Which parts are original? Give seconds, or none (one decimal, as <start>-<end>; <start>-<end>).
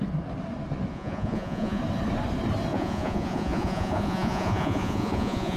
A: 0.0-0.9; 1.8-2.7